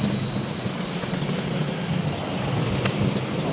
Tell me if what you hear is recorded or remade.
recorded